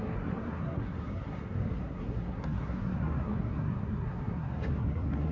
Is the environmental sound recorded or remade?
remade